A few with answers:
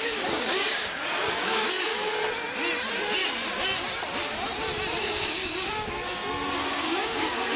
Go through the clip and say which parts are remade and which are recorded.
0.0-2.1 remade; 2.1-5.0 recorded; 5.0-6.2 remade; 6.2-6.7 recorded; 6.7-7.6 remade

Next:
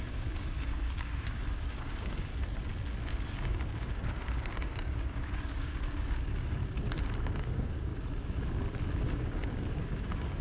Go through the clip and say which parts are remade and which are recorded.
0.0-2.3 remade; 2.3-3.0 recorded; 3.0-6.6 remade; 6.6-7.2 recorded; 7.2-7.9 remade; 7.9-9.1 recorded; 9.1-10.4 remade